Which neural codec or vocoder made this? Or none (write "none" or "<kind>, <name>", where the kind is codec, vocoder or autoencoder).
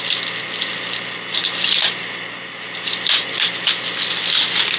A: none